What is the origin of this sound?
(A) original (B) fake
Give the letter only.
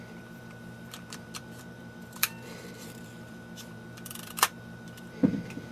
B